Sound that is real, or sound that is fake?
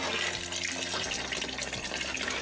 real